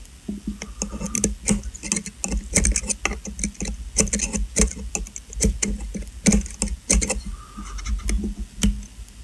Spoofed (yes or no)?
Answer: no